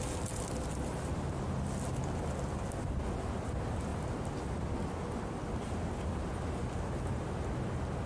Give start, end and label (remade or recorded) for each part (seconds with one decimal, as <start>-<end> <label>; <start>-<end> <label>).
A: 0.0-8.1 recorded